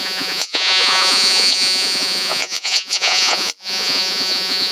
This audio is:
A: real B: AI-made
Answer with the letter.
B